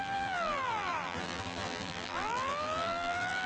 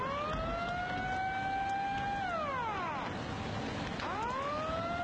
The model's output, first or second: first